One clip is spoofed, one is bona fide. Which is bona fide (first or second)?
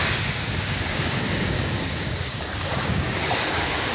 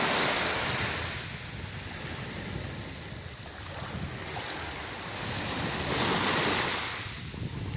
second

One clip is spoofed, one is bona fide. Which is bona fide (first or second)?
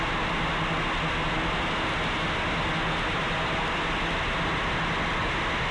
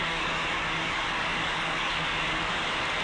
first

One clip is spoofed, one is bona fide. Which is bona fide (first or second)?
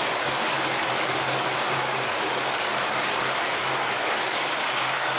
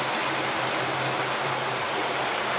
second